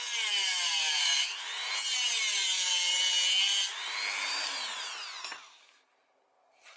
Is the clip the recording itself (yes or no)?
yes